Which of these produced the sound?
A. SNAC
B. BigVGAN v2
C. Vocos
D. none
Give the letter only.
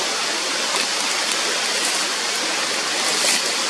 D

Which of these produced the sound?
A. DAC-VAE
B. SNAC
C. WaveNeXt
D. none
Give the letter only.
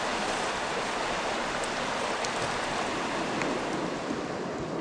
D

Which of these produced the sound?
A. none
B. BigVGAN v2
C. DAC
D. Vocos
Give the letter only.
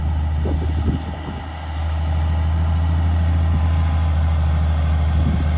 A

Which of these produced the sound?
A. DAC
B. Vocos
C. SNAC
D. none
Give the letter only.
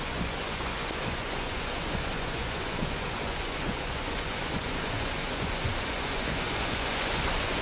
B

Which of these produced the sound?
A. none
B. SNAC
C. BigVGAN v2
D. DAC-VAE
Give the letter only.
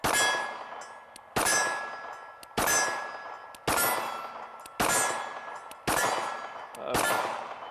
A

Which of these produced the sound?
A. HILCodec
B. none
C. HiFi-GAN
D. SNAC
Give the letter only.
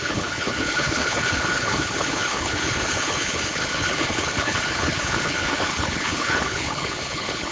A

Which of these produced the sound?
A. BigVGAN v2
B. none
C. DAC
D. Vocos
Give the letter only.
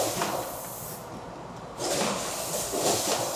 B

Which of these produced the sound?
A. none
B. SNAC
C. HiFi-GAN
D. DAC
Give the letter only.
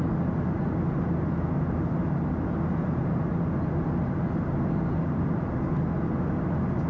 A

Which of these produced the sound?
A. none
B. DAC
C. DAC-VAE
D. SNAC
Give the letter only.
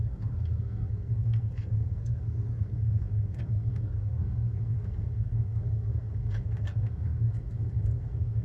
D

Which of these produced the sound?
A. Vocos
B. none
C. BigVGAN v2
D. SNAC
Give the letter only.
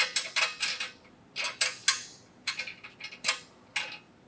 B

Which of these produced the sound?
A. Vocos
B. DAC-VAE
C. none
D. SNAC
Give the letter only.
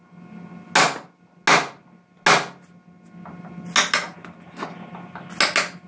C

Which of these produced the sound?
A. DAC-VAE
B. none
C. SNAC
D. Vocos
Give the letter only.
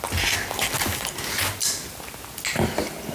B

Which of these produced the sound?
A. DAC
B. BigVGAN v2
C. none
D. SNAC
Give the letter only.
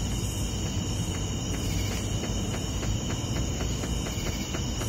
C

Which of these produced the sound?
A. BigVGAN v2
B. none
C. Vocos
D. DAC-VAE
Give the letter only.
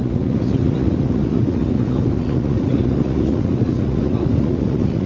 C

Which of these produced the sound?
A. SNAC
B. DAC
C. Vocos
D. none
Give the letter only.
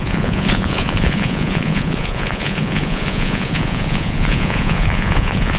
C